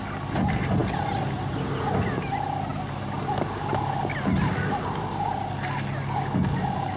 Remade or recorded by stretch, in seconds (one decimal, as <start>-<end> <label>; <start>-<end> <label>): 0.0-7.0 recorded